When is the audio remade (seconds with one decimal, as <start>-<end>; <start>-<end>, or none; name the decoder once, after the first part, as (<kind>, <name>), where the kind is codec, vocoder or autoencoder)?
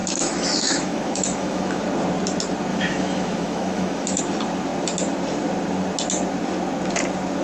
0.0-1.8 (autoencoder, DAC-VAE); 2.7-4.2